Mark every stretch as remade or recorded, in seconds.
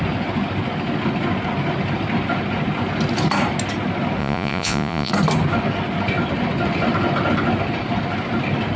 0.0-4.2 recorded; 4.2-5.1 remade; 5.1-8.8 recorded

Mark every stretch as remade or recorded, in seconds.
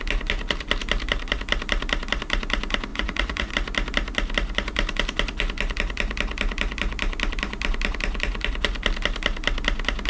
0.0-2.9 recorded; 2.9-3.5 remade; 3.5-10.1 recorded